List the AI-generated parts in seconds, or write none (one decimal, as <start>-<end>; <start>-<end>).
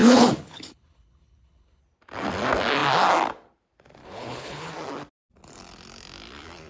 0.0-1.8; 4.0-4.7